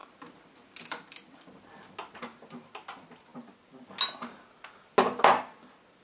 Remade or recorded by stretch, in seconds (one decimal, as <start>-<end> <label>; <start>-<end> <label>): 0.0-6.0 recorded

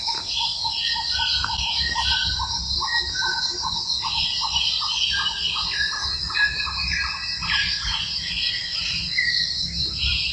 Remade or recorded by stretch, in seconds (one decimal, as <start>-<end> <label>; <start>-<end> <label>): 0.0-10.3 recorded

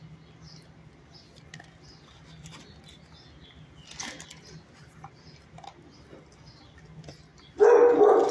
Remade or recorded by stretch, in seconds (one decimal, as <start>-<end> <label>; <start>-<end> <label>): 0.0-8.3 recorded

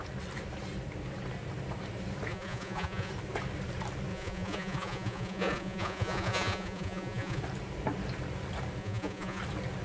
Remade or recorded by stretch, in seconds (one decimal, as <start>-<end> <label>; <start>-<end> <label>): 0.0-2.3 recorded; 2.3-3.1 remade; 3.1-4.1 recorded; 4.1-7.4 remade; 7.4-8.8 recorded; 8.8-9.4 remade; 9.4-9.8 recorded

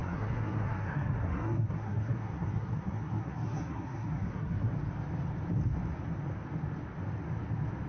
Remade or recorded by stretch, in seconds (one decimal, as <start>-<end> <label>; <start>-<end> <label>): 0.0-4.7 remade; 4.7-7.9 recorded

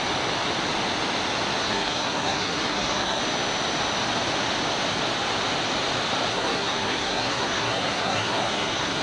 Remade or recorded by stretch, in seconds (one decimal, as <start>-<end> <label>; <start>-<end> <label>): 0.0-1.6 recorded; 1.6-3.2 remade; 3.2-6.3 recorded; 6.3-9.0 remade